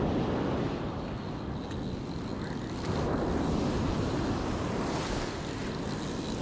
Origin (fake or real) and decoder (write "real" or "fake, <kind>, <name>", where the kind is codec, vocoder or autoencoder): real